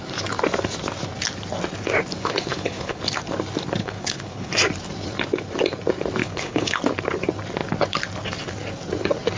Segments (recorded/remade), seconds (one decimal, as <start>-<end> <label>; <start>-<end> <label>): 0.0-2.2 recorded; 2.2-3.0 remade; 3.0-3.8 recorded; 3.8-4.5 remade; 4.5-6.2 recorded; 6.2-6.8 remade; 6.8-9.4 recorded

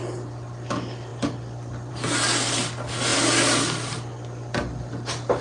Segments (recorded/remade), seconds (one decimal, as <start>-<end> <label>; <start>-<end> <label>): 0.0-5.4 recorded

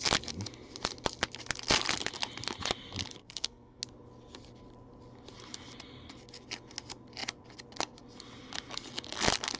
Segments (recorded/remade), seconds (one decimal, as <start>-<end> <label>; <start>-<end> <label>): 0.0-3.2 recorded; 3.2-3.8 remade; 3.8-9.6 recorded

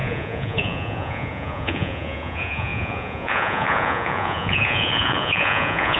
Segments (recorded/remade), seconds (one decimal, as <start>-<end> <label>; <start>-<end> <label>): 0.0-6.0 remade

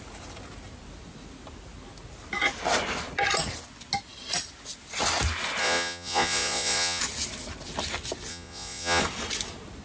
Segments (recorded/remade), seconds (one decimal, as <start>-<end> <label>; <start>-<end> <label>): 0.0-5.6 recorded; 5.6-7.0 remade; 7.0-8.3 recorded; 8.3-9.0 remade; 9.0-9.8 recorded

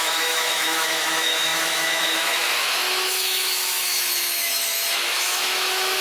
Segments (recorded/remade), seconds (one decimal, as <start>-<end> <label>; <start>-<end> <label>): 0.0-6.0 remade